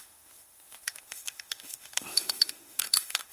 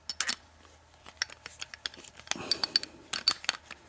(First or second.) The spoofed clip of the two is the first